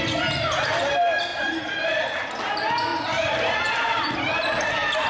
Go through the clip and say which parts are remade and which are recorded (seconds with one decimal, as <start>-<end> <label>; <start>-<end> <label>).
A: 0.0-1.3 recorded; 1.3-2.3 remade; 2.3-2.9 recorded; 2.9-4.1 remade; 4.1-5.1 recorded